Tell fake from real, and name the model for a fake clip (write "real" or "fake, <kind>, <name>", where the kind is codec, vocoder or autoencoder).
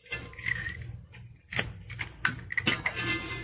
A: real